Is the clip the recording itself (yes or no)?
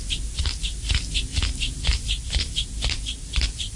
yes